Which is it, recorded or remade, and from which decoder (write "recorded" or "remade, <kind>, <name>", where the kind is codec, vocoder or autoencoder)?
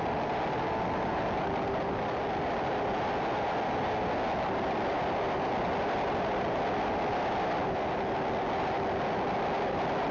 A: recorded